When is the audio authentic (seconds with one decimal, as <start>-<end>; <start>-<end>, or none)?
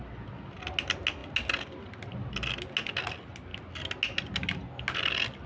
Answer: 0.0-5.5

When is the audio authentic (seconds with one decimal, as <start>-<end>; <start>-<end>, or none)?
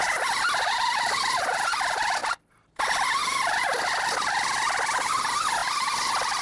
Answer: 0.0-6.4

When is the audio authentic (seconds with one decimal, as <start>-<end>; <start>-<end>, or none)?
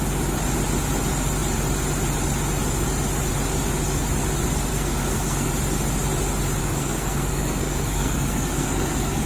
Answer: 0.0-4.7; 5.5-6.6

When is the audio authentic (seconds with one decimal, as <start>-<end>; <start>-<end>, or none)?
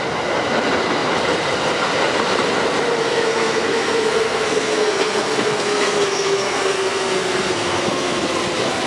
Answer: 0.0-3.0; 8.2-8.9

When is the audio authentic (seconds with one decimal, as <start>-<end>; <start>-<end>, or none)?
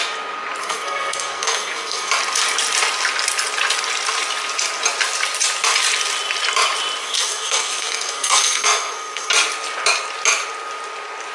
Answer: 0.0-0.6; 2.1-7.0; 9.3-11.3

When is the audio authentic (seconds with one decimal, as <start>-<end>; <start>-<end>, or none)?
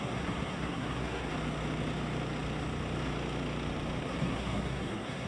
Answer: 1.3-4.0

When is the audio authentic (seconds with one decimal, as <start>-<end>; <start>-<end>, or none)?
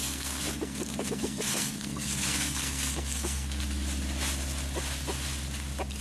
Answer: 3.6-6.0